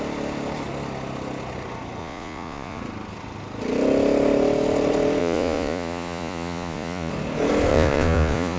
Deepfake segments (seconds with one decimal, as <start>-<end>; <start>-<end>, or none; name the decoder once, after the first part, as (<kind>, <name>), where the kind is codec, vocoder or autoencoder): 2.0-2.8 (vocoder, Vocos); 5.2-7.1; 7.7-8.6